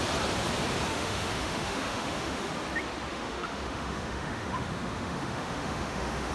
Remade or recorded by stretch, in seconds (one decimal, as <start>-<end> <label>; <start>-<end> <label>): 0.0-0.9 recorded; 0.9-2.5 remade; 2.5-3.1 recorded; 3.1-6.3 remade